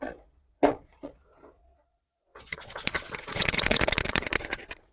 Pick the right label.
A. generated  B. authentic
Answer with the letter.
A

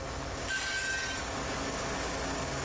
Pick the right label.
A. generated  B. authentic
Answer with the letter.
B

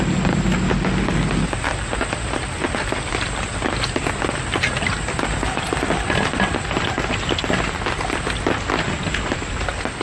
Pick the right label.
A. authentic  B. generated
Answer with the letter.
A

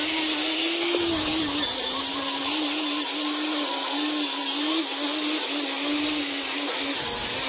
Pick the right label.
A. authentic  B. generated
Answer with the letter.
A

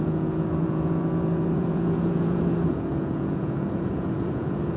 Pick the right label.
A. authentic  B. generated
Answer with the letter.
B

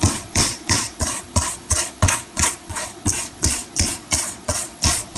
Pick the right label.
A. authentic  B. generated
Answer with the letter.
B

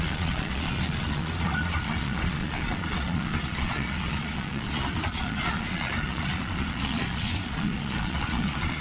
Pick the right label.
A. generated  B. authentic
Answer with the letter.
A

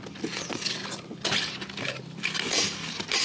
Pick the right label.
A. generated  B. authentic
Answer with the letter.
B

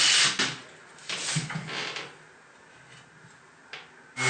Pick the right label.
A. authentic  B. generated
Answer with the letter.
A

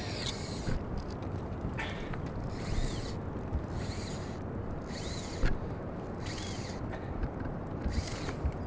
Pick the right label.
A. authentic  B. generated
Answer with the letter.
A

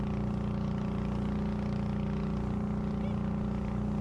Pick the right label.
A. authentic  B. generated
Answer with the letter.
A